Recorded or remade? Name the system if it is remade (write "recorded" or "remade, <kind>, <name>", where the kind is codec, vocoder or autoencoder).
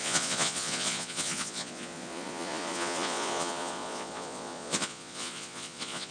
remade, vocoder, Vocos